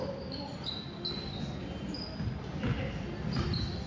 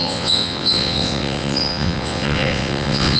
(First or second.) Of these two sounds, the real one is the first